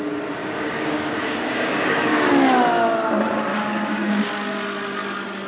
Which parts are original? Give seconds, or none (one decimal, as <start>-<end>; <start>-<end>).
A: 0.0-0.4; 2.3-3.5; 4.3-5.5